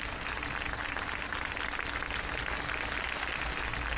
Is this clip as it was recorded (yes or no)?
yes